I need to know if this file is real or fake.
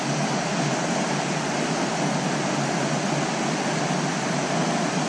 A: real